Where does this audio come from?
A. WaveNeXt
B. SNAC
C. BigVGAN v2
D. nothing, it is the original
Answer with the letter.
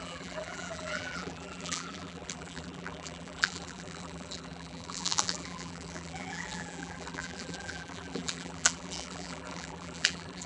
C